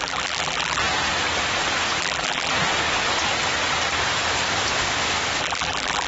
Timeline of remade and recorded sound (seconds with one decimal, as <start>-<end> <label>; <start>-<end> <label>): 0.0-0.8 remade; 0.8-2.0 recorded; 2.0-2.5 remade; 2.5-5.4 recorded; 5.4-6.1 remade